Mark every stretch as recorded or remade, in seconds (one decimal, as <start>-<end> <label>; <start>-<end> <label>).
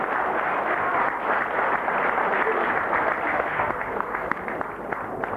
0.0-3.3 recorded; 3.3-4.4 remade; 4.4-5.4 recorded